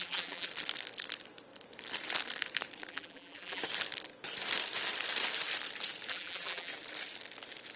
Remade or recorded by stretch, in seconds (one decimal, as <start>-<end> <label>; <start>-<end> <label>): 0.0-0.5 remade; 0.5-2.9 recorded; 2.9-3.6 remade; 3.6-6.1 recorded; 6.1-6.7 remade; 6.7-7.8 recorded